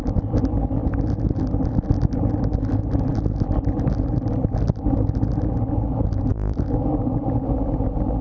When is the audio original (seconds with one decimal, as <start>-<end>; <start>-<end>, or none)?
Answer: 0.0-6.3; 6.9-8.2